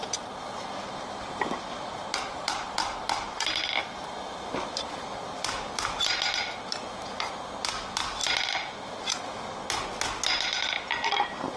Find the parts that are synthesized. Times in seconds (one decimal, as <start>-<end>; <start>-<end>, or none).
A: none